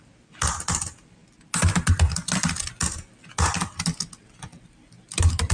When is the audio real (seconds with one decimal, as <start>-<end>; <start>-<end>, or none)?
0.0-5.5